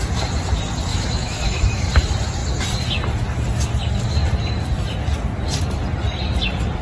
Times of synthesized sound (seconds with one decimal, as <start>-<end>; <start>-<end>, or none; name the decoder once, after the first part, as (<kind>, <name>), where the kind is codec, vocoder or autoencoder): 0.9-1.9 (autoencoder, DAC-VAE)